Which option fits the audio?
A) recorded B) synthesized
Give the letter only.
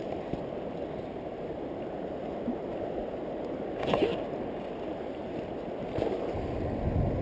A